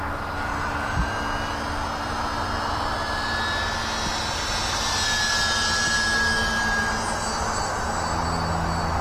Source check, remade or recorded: recorded